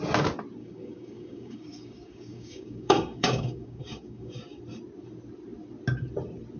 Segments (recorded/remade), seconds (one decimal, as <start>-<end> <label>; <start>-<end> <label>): 0.0-0.6 recorded; 0.6-4.6 remade; 4.6-6.6 recorded